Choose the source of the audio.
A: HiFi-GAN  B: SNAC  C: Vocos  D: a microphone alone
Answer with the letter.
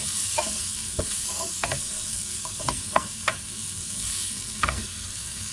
B